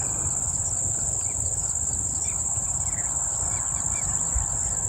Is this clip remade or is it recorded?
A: recorded